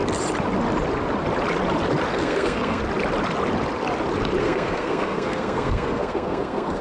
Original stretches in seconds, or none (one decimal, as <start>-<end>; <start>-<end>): 0.0-2.1; 2.8-4.4